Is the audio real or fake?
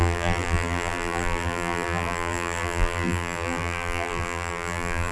fake